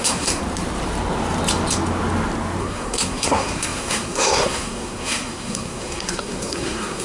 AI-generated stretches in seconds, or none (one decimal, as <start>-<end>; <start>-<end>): 0.0-0.4; 2.6-7.0